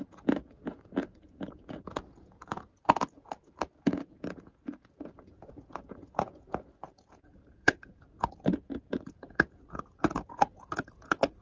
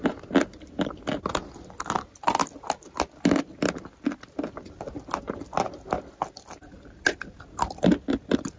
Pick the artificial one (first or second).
first